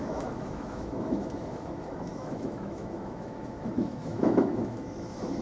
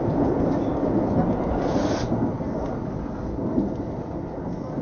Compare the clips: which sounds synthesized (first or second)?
first